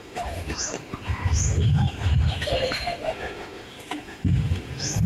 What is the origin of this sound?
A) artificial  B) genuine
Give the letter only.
A